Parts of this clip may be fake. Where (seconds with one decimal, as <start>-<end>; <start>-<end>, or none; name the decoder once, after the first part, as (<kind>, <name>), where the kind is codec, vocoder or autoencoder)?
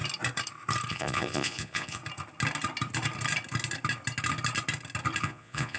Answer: 0.9-2.0 (vocoder, Vocos); 5.2-5.8